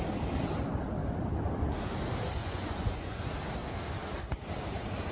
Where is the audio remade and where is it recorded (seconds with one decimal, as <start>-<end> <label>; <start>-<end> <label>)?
0.0-2.4 recorded; 2.4-3.2 remade; 3.2-5.1 recorded